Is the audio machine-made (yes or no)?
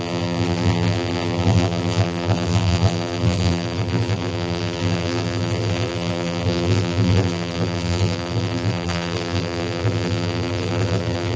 yes